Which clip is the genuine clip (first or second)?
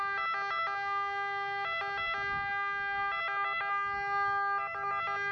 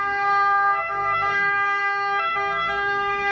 first